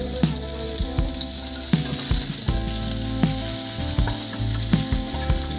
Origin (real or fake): real